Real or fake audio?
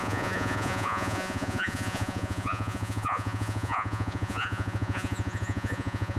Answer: fake